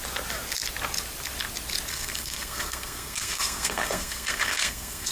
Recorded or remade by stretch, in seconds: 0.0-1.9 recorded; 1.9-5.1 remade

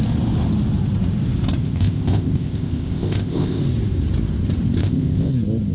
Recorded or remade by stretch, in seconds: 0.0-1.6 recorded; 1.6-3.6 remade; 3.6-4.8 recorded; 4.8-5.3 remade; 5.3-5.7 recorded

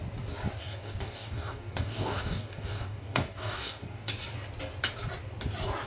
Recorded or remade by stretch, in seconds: 0.0-0.6 recorded; 0.6-4.1 remade; 4.1-5.9 recorded

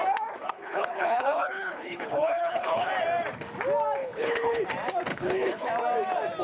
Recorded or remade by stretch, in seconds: 0.0-0.5 recorded; 0.5-2.9 remade; 2.9-4.0 recorded; 4.0-4.6 remade; 4.6-5.1 recorded; 5.1-5.7 remade; 5.7-6.4 recorded

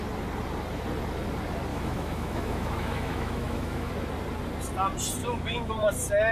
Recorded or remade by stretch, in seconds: 0.0-1.7 recorded; 1.7-3.9 remade; 3.9-5.2 recorded; 5.2-5.7 remade; 5.7-6.3 recorded